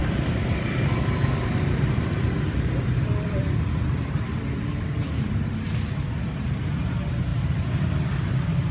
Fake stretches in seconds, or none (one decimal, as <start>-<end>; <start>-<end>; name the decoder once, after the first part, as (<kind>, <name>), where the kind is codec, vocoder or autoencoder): 0.0-4.3 (vocoder, BigVGAN v2); 7.3-8.1